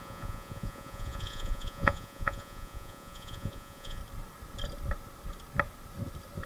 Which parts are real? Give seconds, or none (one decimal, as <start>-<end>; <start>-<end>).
4.0-6.5